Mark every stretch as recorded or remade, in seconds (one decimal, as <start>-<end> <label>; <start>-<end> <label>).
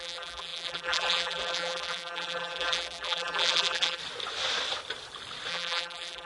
0.0-4.0 remade; 4.0-5.5 recorded; 5.5-6.3 remade